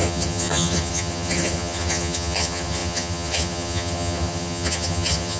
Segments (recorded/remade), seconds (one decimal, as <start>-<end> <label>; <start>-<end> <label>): 0.0-5.4 remade